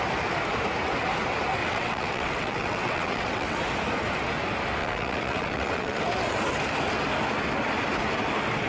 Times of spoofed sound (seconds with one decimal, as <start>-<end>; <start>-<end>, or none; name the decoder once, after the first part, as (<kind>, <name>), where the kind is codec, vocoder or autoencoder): 1.6-3.6 (vocoder, WaveNeXt); 4.8-6.0